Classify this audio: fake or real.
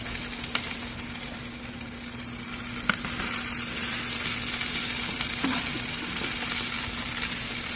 real